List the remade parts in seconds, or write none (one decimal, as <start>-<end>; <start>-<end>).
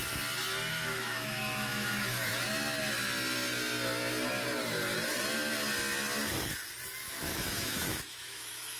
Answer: 0.7-2.3; 7.0-8.8